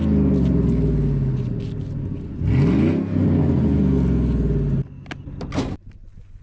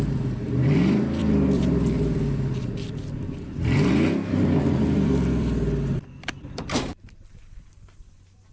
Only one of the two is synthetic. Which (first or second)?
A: second